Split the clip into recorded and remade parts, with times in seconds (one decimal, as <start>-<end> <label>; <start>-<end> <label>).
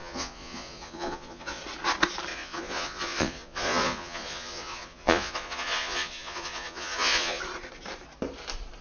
0.0-1.6 remade; 1.6-2.3 recorded; 2.3-7.4 remade; 7.4-8.8 recorded